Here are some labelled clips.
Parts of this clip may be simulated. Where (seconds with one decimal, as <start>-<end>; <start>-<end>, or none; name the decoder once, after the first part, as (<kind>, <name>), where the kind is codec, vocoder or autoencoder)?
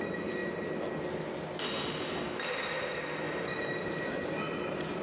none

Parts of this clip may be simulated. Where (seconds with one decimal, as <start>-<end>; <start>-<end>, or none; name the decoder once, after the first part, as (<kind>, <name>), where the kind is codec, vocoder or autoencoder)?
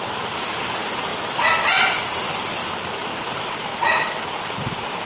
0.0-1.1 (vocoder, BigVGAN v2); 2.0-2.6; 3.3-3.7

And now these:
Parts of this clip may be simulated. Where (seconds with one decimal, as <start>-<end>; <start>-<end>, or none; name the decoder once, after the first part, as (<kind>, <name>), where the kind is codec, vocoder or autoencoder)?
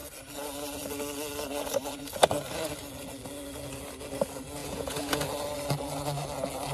4.6-5.2 (vocoder, Vocos)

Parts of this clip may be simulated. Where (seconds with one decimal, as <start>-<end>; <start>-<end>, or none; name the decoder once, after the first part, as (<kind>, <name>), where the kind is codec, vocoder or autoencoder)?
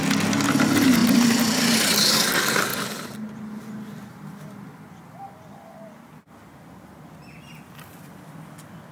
1.0-2.3 (vocoder, BigVGAN v2); 2.7-3.6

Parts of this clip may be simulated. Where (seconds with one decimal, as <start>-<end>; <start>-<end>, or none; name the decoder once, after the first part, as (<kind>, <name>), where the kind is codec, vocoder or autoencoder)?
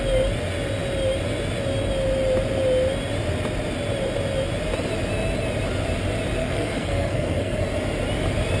6.4-7.6 (codec, SNAC)